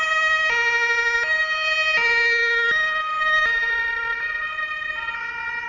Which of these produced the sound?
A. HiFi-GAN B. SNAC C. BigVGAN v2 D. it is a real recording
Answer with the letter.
D